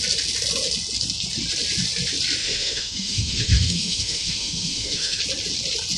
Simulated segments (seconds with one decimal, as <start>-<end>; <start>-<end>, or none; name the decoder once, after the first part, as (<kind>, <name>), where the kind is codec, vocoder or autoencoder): 2.4-5.2 (autoencoder, DAC-VAE)